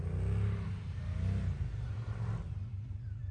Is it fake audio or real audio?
real